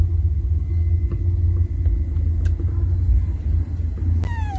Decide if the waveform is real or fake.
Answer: real